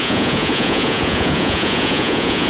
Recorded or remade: remade